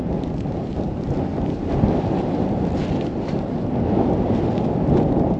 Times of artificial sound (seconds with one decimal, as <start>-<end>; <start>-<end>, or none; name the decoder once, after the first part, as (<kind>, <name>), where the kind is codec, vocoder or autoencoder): 1.3-3.3 (vocoder, BigVGAN v2)

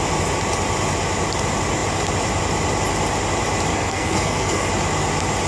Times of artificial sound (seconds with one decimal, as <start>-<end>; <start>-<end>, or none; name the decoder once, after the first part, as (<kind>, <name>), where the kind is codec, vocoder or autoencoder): 3.7-4.7 (codec, SNAC)

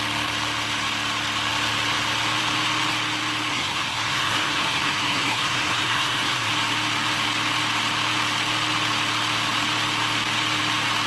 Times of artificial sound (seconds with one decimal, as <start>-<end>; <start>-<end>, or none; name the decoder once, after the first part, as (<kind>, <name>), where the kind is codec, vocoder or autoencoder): 3.5-6.5 (codec, SNAC)

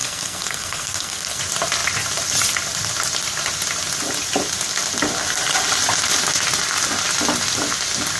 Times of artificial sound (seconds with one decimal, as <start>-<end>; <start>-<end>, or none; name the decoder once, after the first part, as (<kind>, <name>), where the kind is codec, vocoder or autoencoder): 0.0-1.4 (codec, SNAC)

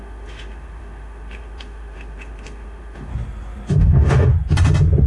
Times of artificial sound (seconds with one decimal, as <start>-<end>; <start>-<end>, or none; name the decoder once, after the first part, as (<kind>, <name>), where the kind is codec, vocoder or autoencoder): 0.0-3.1 (autoencoder, DAC-VAE); 3.7-4.3

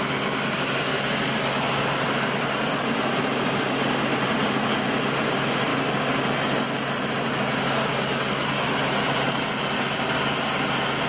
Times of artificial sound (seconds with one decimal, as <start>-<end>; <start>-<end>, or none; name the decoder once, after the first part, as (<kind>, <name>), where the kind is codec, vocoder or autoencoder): none

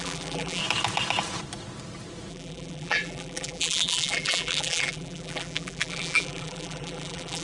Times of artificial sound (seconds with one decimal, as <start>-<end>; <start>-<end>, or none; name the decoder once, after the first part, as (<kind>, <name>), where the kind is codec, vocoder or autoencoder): 0.0-0.6 (vocoder, BigVGAN v2); 2.3-7.4